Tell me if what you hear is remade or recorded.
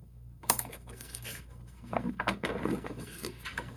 remade